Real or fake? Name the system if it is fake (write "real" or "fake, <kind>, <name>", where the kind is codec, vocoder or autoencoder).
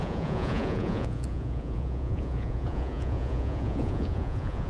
fake, vocoder, Vocos